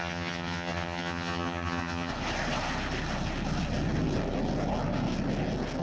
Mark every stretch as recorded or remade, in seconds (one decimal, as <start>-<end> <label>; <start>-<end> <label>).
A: 0.0-2.1 remade; 2.1-5.8 recorded